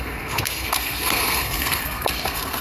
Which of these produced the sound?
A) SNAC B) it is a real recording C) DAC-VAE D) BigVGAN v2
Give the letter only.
A